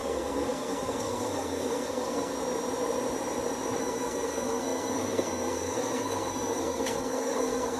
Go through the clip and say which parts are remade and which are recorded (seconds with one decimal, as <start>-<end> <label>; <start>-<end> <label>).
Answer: 0.0-2.3 remade; 2.3-3.8 recorded; 3.8-7.8 remade